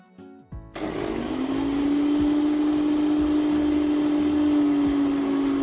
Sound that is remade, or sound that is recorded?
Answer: recorded